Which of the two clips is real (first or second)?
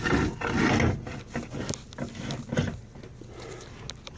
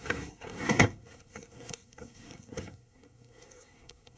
first